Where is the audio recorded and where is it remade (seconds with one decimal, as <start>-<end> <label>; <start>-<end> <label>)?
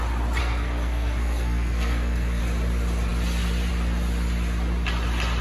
0.0-0.4 recorded; 0.4-2.4 remade; 2.4-5.4 recorded